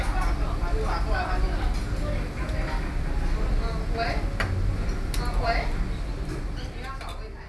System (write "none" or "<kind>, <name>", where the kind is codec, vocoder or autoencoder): none